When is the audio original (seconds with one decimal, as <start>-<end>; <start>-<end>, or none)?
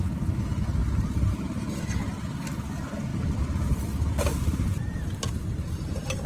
0.0-0.8; 1.7-3.1